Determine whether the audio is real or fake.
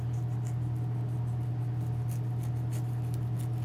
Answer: real